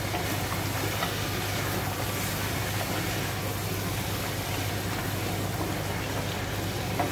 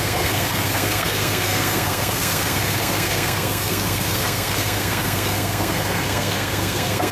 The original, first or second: first